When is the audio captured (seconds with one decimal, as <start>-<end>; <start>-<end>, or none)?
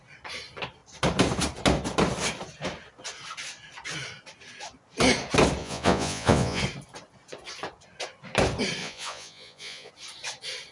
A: 0.0-5.6; 6.6-8.8; 9.9-10.7